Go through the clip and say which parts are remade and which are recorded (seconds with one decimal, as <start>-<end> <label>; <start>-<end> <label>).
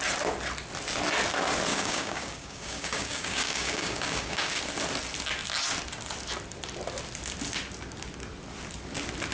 0.0-1.7 recorded; 1.7-4.6 remade; 4.6-9.3 recorded